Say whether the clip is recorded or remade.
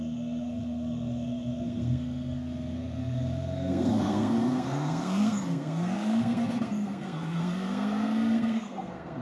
remade